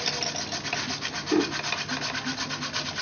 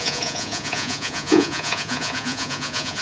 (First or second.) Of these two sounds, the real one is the first